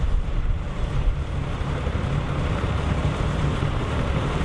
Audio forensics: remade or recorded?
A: remade